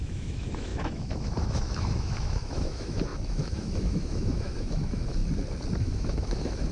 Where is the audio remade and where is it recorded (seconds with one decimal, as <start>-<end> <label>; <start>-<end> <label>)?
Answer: 0.0-5.2 remade; 5.2-5.8 recorded; 5.8-6.7 remade